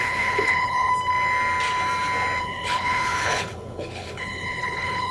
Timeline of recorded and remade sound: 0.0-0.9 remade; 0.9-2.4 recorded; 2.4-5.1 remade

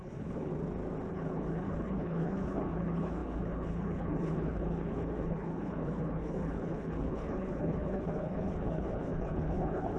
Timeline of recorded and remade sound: 0.0-0.5 remade; 0.5-1.1 recorded; 1.1-10.0 remade

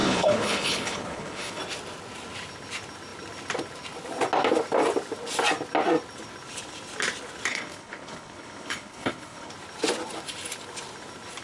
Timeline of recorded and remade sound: 0.0-1.6 remade; 1.6-7.5 recorded; 7.5-9.5 remade; 9.5-11.4 recorded

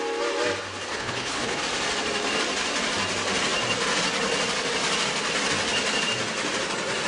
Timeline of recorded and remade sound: 0.0-0.9 recorded; 0.9-1.6 remade; 1.6-7.1 recorded

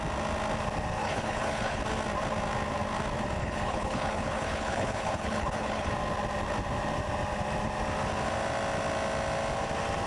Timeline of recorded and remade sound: 0.0-1.0 recorded; 1.0-1.8 remade; 1.8-3.4 recorded; 3.4-5.9 remade; 5.9-10.1 recorded

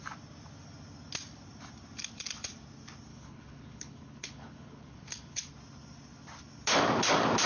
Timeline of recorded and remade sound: 0.0-3.1 recorded; 3.1-5.5 remade; 5.5-7.5 recorded